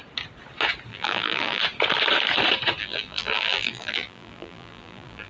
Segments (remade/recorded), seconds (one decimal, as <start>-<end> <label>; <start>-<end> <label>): 0.0-0.9 recorded; 0.9-1.6 remade; 1.6-2.8 recorded; 2.8-5.3 remade